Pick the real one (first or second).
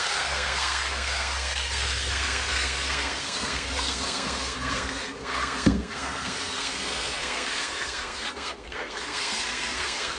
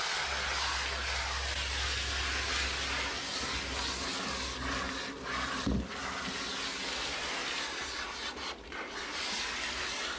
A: second